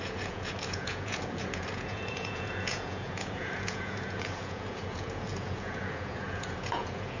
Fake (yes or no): yes